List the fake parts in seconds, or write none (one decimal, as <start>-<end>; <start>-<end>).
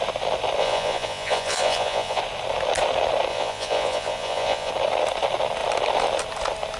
0.6-2.2; 3.3-4.7